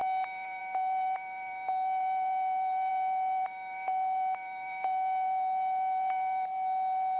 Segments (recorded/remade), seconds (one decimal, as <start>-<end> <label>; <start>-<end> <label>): 0.0-7.2 recorded